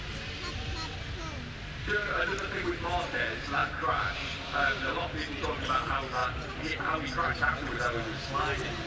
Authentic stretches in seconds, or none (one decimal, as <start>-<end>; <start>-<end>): 0.0-8.9